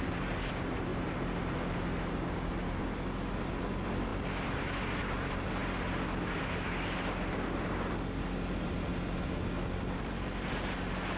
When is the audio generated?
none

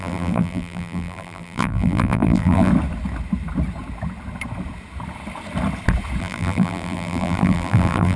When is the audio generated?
0.0-2.7 (vocoder, BigVGAN v2); 6.2-8.2